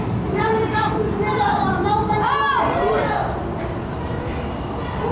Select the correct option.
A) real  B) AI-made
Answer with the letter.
A